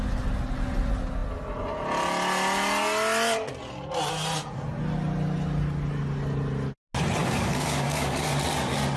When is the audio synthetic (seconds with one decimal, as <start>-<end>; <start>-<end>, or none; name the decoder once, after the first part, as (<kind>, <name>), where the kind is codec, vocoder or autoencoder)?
7.2-8.3 (codec, DAC)